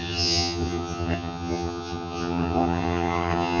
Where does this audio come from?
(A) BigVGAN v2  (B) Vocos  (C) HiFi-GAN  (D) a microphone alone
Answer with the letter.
C